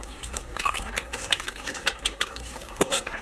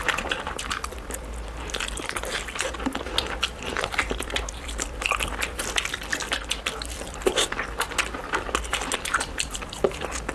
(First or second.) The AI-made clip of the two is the first